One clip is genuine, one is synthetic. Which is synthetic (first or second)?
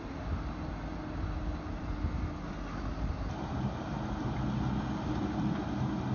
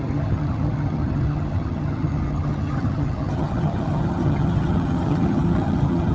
second